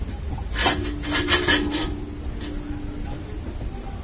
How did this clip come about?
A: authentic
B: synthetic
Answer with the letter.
A